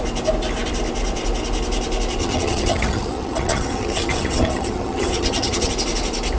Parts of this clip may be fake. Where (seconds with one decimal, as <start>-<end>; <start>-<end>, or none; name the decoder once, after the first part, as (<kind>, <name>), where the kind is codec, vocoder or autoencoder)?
2.2-5.7 (vocoder, HiFi-GAN)